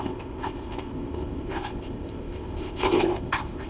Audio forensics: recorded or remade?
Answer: remade